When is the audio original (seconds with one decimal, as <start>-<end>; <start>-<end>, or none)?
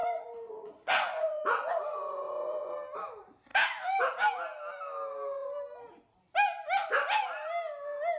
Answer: 2.7-8.2